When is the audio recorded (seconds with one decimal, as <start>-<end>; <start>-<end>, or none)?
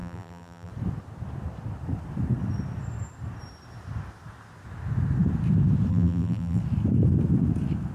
0.7-5.9; 6.6-7.9